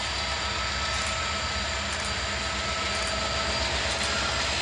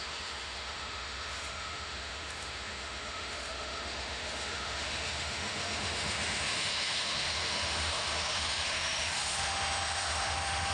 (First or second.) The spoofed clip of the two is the second